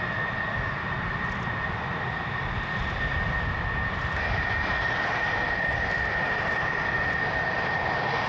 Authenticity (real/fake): real